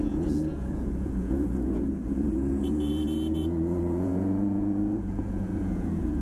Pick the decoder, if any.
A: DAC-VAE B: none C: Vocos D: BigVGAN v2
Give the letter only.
C